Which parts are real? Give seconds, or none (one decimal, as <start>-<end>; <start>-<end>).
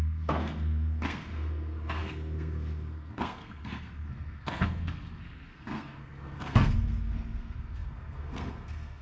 none